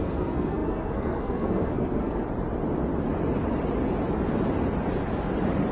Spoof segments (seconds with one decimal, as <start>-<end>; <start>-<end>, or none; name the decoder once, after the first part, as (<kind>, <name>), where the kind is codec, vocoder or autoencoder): 0.0-2.2 (codec, SNAC)